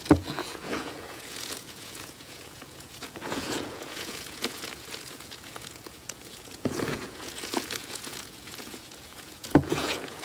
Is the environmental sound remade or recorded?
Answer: remade